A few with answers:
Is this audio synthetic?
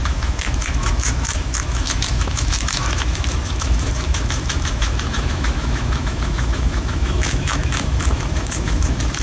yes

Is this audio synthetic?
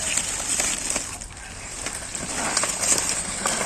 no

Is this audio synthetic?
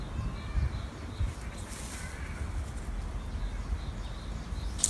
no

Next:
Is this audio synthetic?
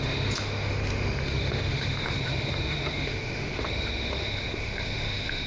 yes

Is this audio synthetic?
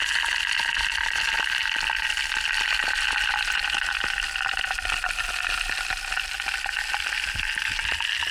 no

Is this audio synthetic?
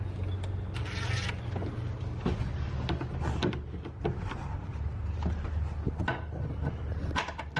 no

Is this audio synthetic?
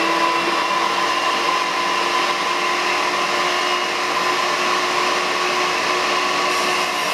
no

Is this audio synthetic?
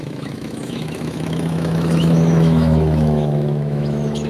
yes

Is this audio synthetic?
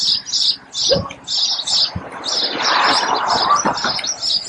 no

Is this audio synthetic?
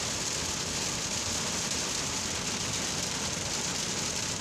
no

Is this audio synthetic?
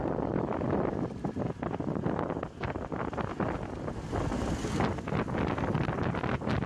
no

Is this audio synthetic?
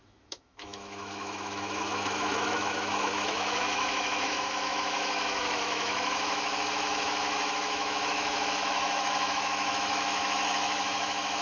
yes